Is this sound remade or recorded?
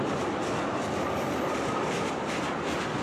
recorded